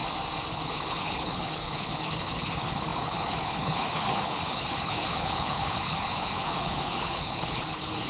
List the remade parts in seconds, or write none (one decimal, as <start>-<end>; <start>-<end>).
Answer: 0.5-8.1